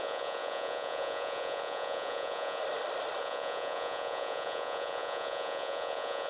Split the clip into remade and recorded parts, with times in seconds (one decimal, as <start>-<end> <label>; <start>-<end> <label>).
0.0-2.6 remade; 2.6-3.2 recorded; 3.2-6.3 remade